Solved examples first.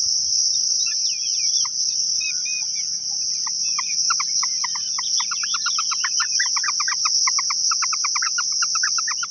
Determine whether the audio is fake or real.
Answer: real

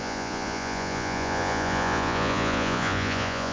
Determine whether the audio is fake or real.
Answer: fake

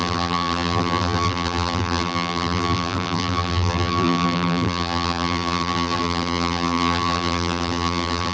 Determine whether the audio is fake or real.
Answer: fake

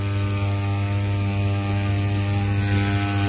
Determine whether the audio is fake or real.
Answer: real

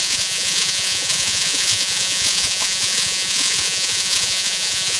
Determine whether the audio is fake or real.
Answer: fake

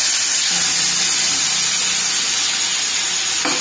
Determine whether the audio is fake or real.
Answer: real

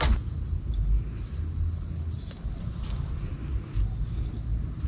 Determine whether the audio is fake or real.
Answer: real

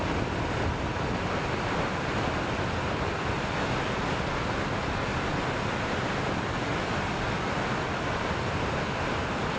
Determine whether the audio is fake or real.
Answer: real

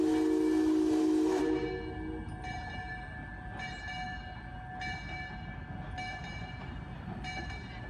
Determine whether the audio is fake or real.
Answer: real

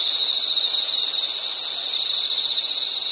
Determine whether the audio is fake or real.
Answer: real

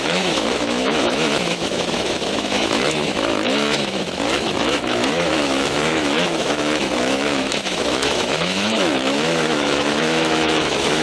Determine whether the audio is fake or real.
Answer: fake